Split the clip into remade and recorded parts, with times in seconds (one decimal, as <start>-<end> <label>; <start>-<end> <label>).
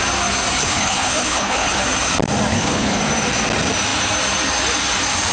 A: 0.0-0.6 recorded; 0.6-1.8 remade; 1.8-2.5 recorded; 2.5-3.0 remade; 3.0-5.3 recorded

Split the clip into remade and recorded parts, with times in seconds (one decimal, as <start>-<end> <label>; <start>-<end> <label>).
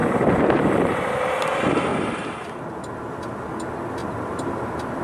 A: 0.0-1.4 remade; 1.4-4.0 recorded; 4.0-5.0 remade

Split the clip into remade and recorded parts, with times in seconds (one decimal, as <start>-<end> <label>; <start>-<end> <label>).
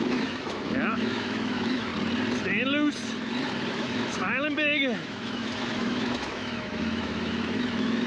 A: 0.0-1.9 remade; 1.9-3.7 recorded; 3.7-8.1 remade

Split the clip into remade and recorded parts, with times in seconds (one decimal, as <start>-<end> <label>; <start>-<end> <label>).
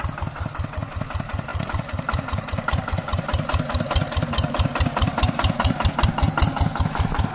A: 0.0-1.5 recorded; 1.5-5.9 remade; 5.9-7.3 recorded